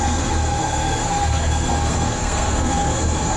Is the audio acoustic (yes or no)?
no